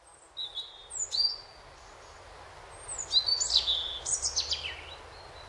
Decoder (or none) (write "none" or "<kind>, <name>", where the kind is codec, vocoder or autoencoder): none